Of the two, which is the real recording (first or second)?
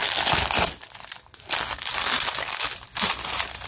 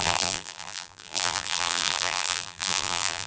first